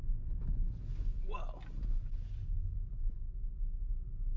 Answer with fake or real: real